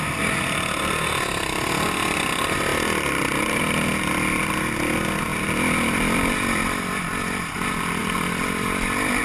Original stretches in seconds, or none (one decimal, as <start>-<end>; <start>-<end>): 0.0-8.0